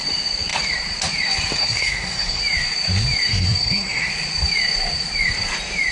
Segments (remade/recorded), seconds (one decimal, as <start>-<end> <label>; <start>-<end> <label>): 0.0-1.6 recorded; 1.6-2.4 remade; 2.4-3.3 recorded; 3.3-4.1 remade; 4.1-5.9 recorded